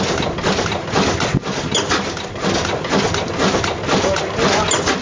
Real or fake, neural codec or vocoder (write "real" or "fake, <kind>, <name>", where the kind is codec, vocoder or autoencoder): real